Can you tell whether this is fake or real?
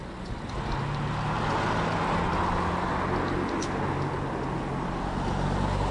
real